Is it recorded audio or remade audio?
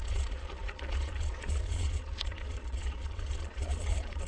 remade